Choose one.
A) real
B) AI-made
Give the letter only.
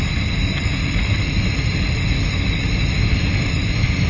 A